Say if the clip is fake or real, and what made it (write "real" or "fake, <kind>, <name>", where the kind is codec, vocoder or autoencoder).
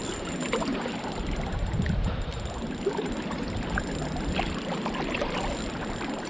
fake, vocoder, BigVGAN v2